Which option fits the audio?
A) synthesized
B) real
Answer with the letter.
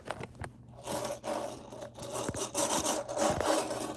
B